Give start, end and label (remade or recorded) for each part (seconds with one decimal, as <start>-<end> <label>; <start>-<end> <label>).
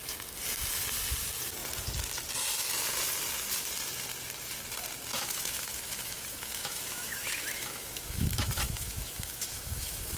0.0-5.1 recorded; 5.1-10.2 remade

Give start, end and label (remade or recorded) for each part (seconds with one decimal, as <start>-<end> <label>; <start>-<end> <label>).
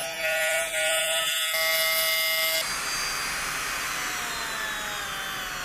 0.0-5.6 recorded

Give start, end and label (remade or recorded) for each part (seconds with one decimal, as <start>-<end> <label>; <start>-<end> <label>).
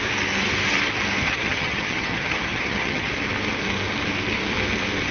0.0-1.2 recorded; 1.2-3.1 remade; 3.1-5.1 recorded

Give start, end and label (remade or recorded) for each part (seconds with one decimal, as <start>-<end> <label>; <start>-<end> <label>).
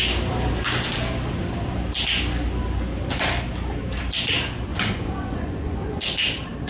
0.0-4.7 recorded; 4.7-6.0 remade; 6.0-6.7 recorded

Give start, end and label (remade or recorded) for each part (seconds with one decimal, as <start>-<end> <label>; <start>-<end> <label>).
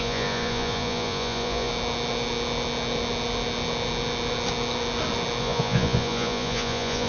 0.0-1.7 remade; 1.7-5.4 recorded; 5.4-7.1 remade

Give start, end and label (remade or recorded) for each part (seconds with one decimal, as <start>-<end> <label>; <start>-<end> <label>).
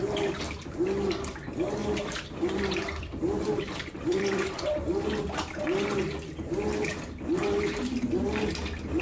0.0-1.8 recorded; 1.8-5.2 remade; 5.2-9.0 recorded